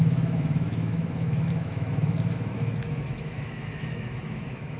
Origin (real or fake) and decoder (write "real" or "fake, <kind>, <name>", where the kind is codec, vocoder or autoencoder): fake, autoencoder, DAC-VAE